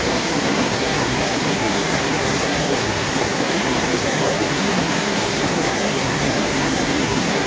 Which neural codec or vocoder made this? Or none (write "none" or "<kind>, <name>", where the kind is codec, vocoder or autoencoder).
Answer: codec, SNAC